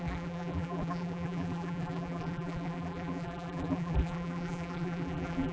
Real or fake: fake